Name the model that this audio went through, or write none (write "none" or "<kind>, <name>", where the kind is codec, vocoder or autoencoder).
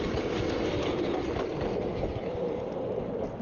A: none